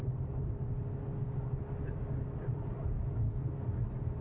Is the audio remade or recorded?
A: recorded